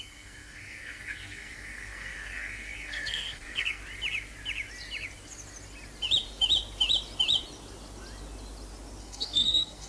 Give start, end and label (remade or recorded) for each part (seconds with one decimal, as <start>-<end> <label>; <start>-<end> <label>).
0.0-3.8 remade; 3.8-9.0 recorded; 9.0-9.9 remade